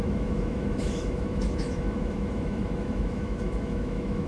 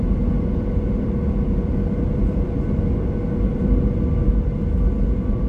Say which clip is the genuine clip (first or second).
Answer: second